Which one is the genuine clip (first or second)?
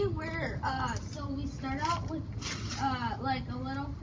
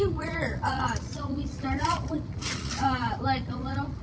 first